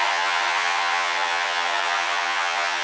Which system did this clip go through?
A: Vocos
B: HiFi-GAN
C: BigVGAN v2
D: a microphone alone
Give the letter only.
B